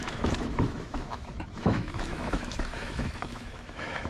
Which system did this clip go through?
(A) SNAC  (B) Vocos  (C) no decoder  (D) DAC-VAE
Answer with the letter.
D